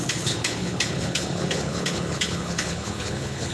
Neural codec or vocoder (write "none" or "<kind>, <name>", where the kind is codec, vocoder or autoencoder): codec, HILCodec